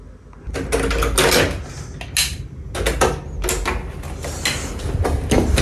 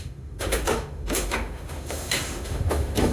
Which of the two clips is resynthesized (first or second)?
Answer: second